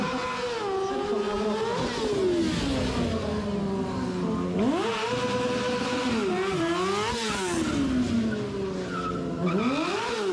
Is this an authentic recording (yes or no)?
yes